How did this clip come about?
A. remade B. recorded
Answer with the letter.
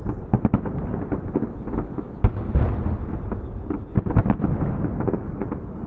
B